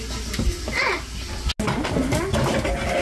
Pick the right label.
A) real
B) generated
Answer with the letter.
A